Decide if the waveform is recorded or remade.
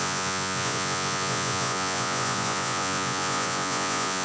remade